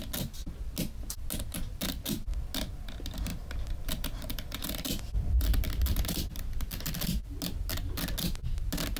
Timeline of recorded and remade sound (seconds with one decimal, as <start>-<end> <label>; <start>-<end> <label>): 0.0-3.3 recorded; 3.3-7.0 remade; 7.0-9.0 recorded